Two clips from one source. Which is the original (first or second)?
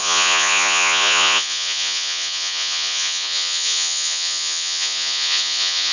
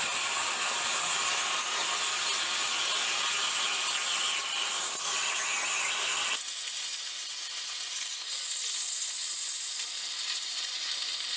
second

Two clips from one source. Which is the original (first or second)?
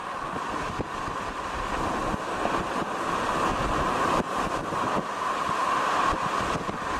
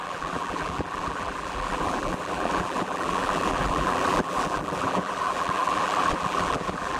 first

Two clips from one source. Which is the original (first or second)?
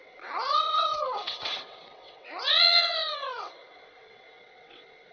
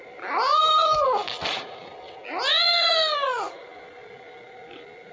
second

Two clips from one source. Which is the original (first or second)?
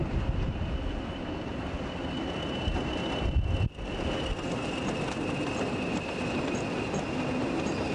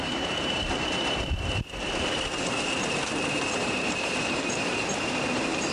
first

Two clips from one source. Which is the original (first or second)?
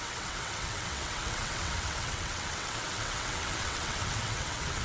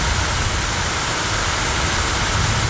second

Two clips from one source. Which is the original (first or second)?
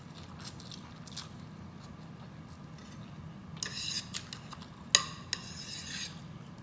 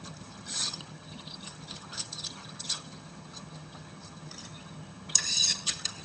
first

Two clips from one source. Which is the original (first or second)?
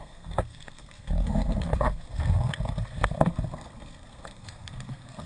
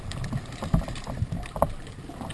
second